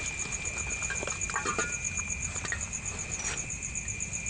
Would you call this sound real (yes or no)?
yes